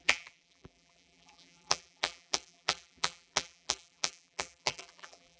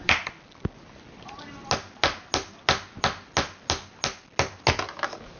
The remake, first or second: first